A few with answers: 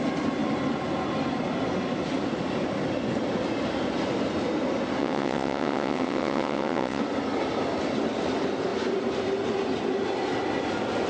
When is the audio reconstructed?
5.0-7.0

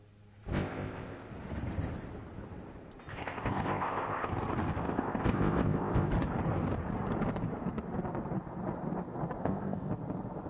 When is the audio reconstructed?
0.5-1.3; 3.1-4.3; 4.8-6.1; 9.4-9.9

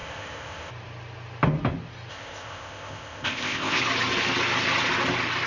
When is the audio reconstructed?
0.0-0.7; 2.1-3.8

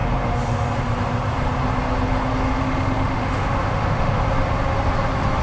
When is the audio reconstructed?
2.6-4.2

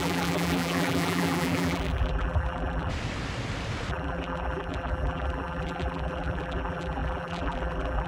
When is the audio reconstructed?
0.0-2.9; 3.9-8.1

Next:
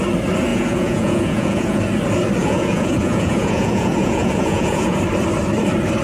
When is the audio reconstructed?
0.5-1.8; 2.4-5.0

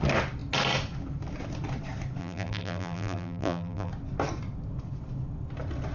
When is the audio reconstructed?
2.2-3.9

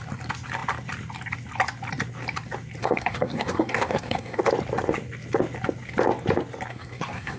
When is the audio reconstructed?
2.8-4.4; 6.7-7.4